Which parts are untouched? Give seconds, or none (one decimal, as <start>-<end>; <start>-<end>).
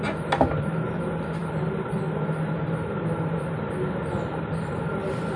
0.0-5.4